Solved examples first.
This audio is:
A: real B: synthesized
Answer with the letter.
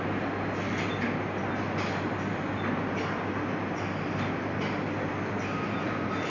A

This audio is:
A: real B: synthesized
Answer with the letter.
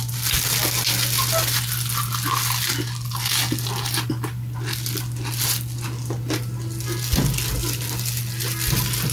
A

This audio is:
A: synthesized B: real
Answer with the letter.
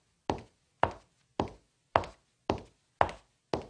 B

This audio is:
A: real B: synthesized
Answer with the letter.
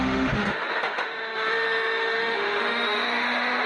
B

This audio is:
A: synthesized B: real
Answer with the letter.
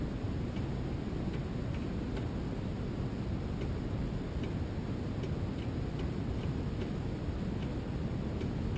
B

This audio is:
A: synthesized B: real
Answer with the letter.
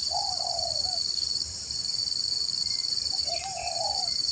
A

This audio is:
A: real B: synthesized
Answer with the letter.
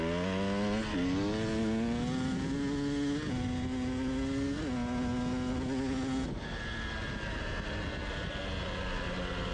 A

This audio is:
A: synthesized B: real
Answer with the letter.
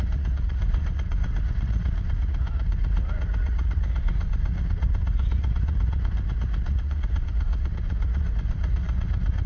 A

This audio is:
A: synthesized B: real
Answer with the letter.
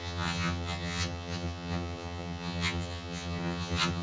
A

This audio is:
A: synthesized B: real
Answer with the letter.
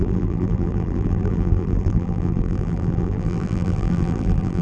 A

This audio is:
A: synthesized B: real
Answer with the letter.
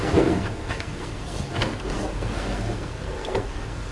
A